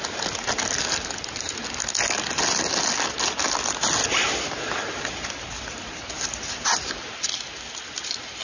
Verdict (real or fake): real